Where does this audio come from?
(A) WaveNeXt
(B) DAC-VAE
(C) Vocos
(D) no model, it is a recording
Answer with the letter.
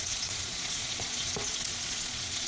C